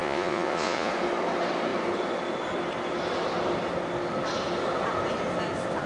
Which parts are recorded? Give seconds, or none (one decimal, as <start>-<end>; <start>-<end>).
0.9-5.9